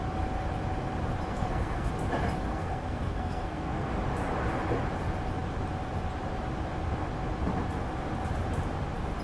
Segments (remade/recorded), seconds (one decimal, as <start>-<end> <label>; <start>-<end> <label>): 0.0-1.3 recorded; 1.3-1.9 remade; 1.9-2.5 recorded; 2.5-3.9 remade; 3.9-9.2 recorded

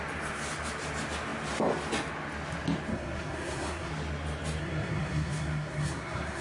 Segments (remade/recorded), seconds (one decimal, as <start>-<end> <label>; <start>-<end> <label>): 0.0-2.9 recorded; 2.9-3.9 remade; 3.9-4.6 recorded; 4.6-6.4 remade

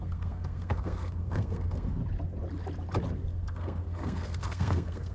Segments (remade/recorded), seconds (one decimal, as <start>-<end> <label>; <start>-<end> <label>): 0.0-2.0 remade; 2.0-3.3 recorded; 3.3-5.1 remade

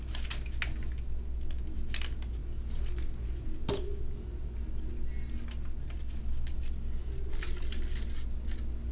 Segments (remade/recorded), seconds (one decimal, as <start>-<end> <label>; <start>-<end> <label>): 0.0-8.9 recorded

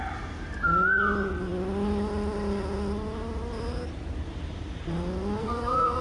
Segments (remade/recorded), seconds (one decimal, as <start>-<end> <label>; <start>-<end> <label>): 0.0-5.4 recorded; 5.4-6.0 remade

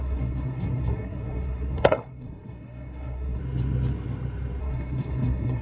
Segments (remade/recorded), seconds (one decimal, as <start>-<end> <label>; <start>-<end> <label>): 0.0-3.4 remade; 3.4-4.6 recorded; 4.6-5.6 remade

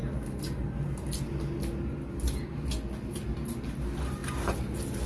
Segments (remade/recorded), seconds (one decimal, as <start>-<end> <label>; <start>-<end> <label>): 0.0-5.1 recorded

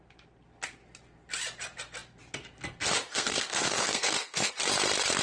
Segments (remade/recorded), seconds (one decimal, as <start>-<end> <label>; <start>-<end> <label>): 0.0-3.1 recorded; 3.1-4.5 remade; 4.5-5.2 recorded